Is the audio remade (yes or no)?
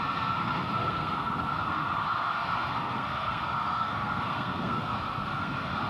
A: yes